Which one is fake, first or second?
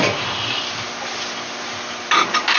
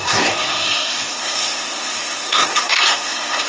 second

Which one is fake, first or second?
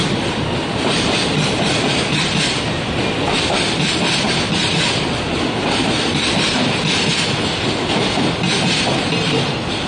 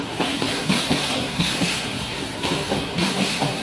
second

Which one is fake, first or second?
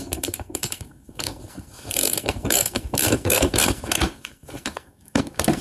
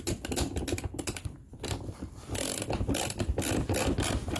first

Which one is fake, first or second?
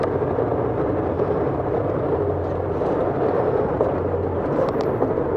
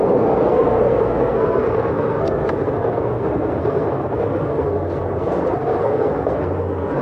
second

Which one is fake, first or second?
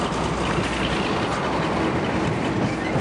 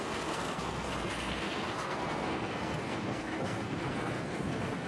second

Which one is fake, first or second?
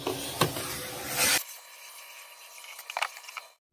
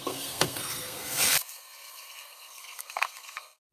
second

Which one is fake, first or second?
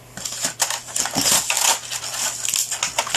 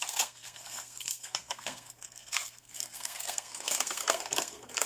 second